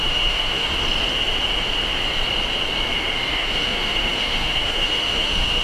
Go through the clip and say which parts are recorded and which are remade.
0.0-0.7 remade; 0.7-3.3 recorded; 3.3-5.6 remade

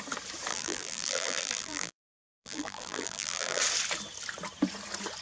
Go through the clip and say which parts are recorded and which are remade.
0.0-0.5 recorded; 0.5-3.6 remade; 3.6-5.2 recorded

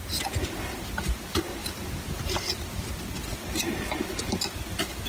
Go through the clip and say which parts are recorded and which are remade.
0.0-5.1 recorded

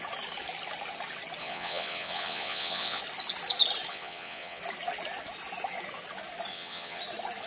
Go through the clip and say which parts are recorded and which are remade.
0.0-1.4 recorded; 1.4-3.0 remade; 3.0-3.9 recorded; 3.9-4.6 remade; 4.6-6.5 recorded; 6.5-7.0 remade; 7.0-7.5 recorded

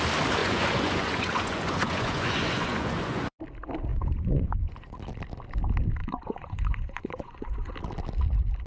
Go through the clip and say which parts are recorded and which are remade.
0.0-0.4 recorded; 0.4-3.4 remade; 3.4-3.9 recorded; 3.9-4.9 remade; 4.9-6.0 recorded; 6.0-7.7 remade; 7.7-8.7 recorded

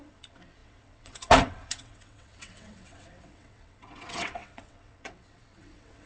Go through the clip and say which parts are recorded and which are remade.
0.0-6.1 remade

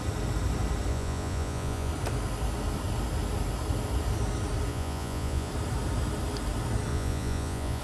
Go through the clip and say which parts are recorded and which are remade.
0.0-0.9 recorded; 0.9-1.9 remade; 1.9-4.7 recorded; 4.7-5.5 remade; 5.5-6.9 recorded; 6.9-7.8 remade

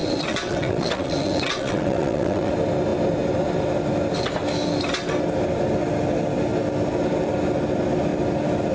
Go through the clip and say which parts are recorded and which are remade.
0.0-2.5 remade; 2.5-8.7 recorded